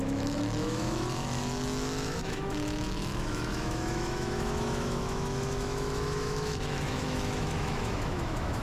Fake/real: fake